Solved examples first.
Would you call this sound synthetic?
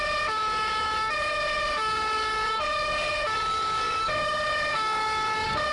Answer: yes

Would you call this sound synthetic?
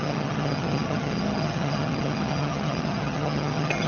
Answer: yes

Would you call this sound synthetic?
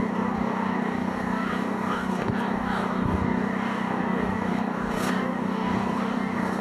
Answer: yes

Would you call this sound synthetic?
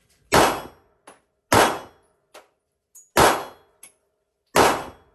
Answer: no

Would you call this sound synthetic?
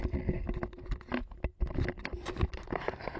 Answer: no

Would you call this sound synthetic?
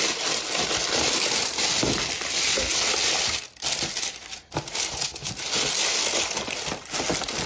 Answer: no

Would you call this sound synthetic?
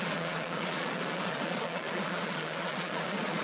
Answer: yes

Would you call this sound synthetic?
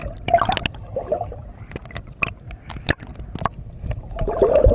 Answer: no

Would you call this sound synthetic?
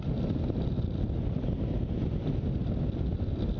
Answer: no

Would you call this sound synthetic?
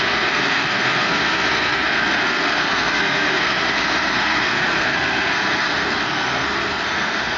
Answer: yes